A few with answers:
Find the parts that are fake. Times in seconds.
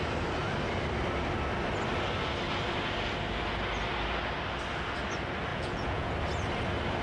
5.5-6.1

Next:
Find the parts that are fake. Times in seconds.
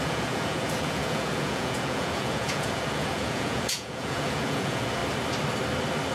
0.0-5.0